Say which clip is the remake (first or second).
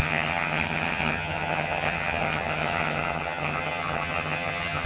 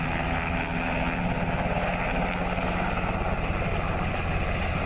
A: first